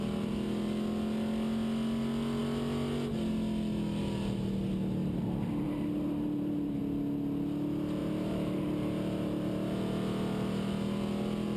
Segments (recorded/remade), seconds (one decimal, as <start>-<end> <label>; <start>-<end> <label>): 0.0-5.0 recorded; 5.0-6.8 remade; 6.8-8.0 recorded; 8.0-8.6 remade; 8.6-11.6 recorded